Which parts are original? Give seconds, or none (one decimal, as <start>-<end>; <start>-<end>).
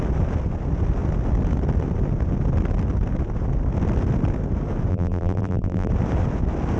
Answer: 0.0-4.9; 5.9-6.8